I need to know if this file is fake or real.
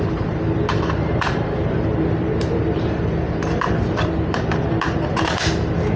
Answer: fake